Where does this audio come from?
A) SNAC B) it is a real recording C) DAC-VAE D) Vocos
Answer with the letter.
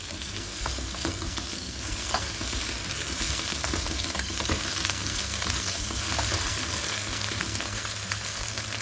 A